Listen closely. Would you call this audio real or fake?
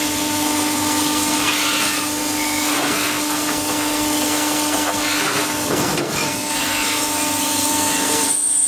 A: fake